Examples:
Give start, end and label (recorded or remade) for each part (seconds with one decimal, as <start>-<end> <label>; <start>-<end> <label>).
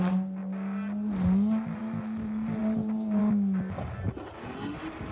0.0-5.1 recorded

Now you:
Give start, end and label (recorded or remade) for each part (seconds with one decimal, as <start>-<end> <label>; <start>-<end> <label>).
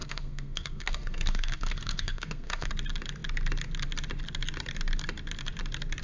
0.0-2.7 remade; 2.7-6.0 recorded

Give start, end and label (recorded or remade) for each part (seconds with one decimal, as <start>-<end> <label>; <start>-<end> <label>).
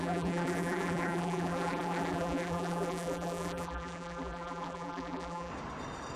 0.0-5.5 remade; 5.5-6.2 recorded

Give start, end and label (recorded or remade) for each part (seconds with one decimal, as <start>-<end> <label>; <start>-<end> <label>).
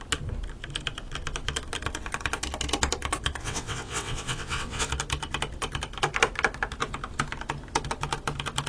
0.0-3.4 recorded; 3.4-4.9 remade; 4.9-8.7 recorded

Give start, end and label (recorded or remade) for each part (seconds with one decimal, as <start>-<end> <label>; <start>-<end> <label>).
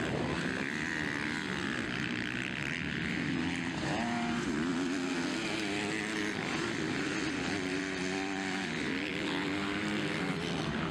0.0-4.7 remade; 4.7-5.8 recorded; 5.8-9.1 remade; 9.1-10.3 recorded; 10.3-10.9 remade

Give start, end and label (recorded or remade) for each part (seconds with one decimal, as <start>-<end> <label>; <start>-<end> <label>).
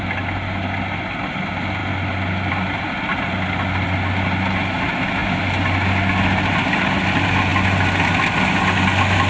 0.0-9.3 recorded